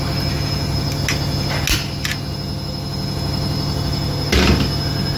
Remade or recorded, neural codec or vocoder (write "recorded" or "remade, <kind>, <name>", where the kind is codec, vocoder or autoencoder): recorded